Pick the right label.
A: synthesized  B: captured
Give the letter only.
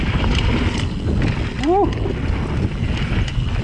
B